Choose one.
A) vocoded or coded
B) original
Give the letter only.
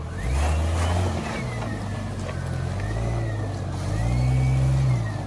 B